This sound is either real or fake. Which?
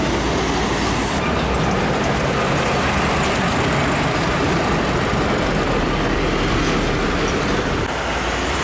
real